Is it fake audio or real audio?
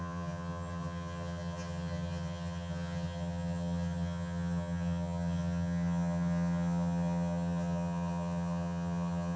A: fake